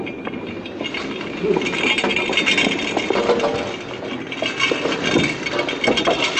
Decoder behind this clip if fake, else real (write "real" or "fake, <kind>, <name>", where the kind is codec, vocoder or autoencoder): real